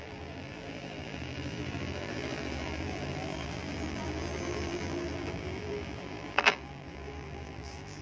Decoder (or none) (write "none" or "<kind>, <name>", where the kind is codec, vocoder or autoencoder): vocoder, BigVGAN v2